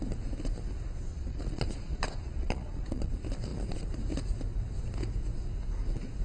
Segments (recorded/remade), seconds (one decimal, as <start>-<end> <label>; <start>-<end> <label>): 0.0-1.1 recorded; 1.1-3.1 remade; 3.1-6.2 recorded